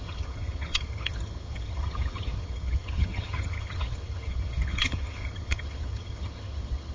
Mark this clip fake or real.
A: fake